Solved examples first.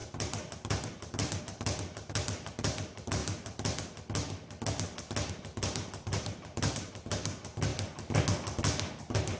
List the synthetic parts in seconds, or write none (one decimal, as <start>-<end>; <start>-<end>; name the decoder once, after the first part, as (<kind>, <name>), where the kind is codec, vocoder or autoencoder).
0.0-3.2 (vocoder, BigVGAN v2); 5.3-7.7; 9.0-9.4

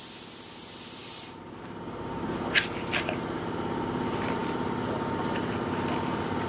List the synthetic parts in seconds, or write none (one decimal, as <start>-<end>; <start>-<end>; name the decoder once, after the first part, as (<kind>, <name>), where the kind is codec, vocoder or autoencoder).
1.0-1.8 (vocoder, BigVGAN v2)

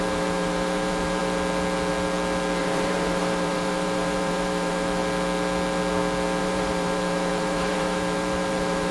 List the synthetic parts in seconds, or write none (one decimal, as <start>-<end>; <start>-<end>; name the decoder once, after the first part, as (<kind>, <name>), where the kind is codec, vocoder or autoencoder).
0.0-1.2 (vocoder, BigVGAN v2); 2.6-5.0; 6.4-8.9

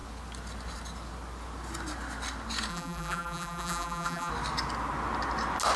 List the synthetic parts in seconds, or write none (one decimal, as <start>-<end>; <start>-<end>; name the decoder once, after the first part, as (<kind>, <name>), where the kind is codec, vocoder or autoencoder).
2.7-4.3 (vocoder, BigVGAN v2)